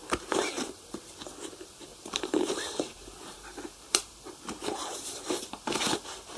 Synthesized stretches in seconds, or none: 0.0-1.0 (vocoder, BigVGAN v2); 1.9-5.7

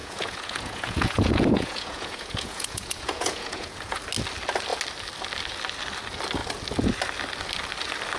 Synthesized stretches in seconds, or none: 0.0-4.0 (vocoder, Vocos)

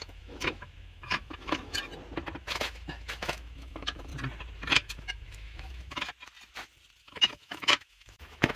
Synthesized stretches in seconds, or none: 0.0-1.8 (autoencoder, DAC-VAE); 2.4-4.1; 4.7-6.1; 7.0-8.6

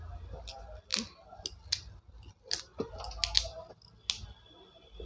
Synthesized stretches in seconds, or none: none

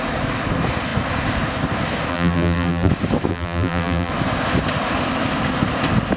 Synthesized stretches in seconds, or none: 2.1-2.9 (vocoder, BigVGAN v2); 3.3-4.1

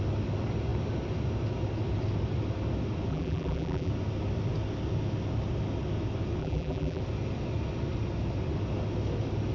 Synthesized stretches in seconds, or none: 3.1-3.9 (vocoder, BigVGAN v2); 6.4-7.0

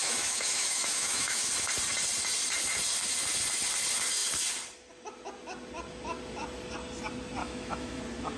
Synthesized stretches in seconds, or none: 0.0-1.5 (autoencoder, DAC-VAE); 7.4-8.0

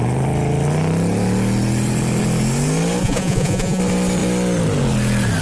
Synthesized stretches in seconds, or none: 3.0-3.8 (vocoder, Vocos)